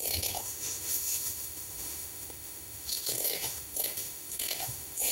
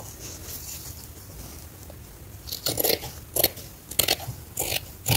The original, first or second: second